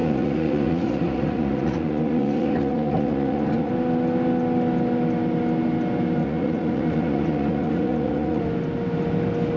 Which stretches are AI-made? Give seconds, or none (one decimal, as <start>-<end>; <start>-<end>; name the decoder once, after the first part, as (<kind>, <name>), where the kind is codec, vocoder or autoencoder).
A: 0.0-3.7 (vocoder, Vocos); 6.2-8.4